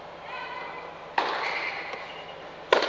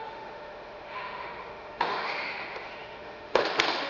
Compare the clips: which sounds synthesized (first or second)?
second